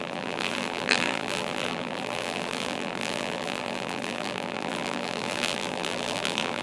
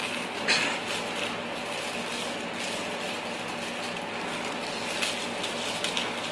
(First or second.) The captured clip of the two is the second